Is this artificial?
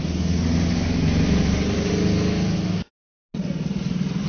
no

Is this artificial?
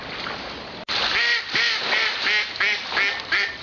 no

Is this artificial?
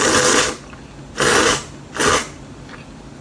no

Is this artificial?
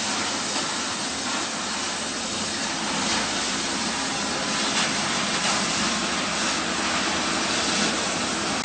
no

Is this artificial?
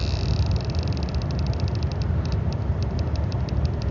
no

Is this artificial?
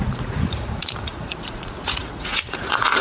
yes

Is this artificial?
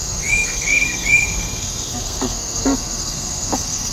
yes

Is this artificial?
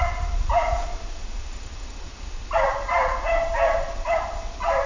no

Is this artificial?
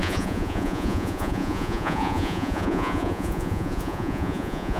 yes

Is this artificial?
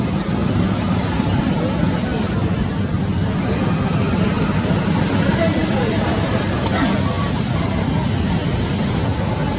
no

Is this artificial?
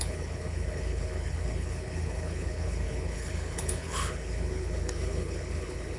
yes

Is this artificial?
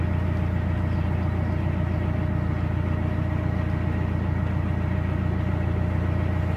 no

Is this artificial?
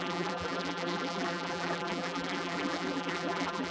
yes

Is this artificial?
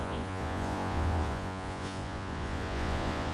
yes